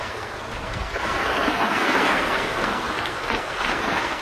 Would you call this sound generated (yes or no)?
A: yes